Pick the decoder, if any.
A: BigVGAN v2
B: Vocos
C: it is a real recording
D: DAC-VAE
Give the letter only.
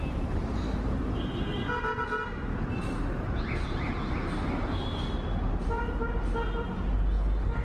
C